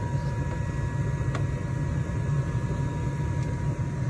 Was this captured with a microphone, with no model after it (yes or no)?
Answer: yes